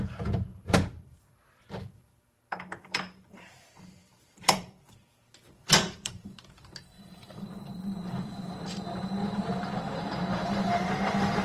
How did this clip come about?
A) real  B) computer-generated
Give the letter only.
B